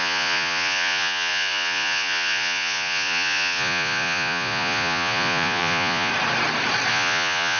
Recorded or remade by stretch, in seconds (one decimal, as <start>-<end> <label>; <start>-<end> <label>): 0.0-6.1 remade; 6.1-6.9 recorded; 6.9-7.6 remade